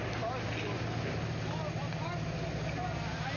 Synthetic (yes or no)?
no